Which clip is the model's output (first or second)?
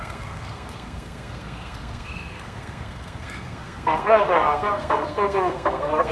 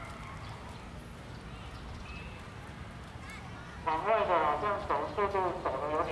first